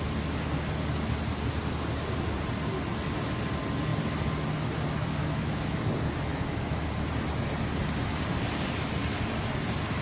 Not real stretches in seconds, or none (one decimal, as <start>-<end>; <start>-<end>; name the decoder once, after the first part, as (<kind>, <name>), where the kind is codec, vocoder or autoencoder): 5.2-5.8 (autoencoder, DAC-VAE); 6.3-6.8